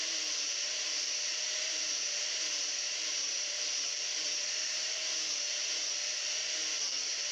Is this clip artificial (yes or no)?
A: yes